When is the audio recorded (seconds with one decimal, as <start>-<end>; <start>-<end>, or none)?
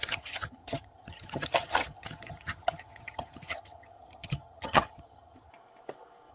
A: 5.5-6.3